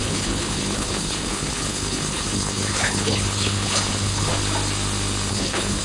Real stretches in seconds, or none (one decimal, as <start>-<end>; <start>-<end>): 4.3-5.3